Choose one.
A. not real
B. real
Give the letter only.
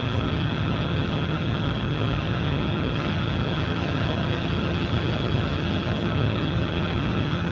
A